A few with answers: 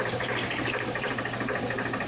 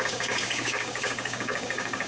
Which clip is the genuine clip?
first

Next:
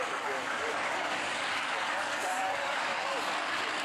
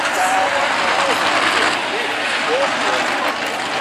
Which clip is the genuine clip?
second